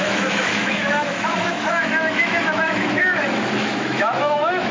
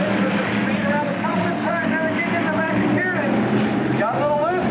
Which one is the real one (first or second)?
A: second